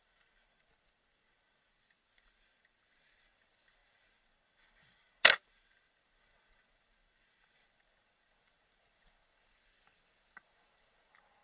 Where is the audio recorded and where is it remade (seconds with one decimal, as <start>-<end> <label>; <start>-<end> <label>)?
0.0-11.4 recorded